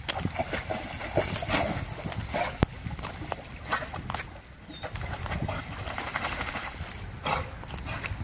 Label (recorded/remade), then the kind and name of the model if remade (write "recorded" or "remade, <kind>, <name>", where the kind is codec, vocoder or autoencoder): recorded